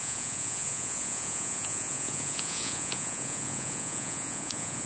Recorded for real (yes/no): no